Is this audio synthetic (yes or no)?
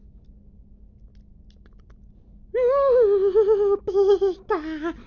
no